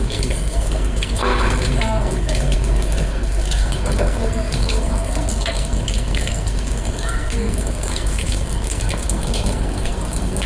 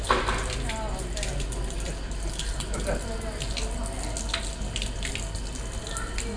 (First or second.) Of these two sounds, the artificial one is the first